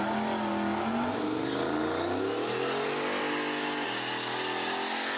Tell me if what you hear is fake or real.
real